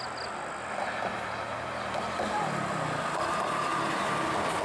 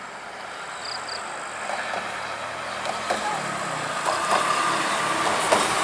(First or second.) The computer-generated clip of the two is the second